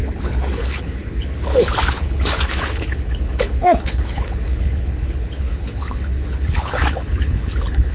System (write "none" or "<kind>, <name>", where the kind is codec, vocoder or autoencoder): codec, HILCodec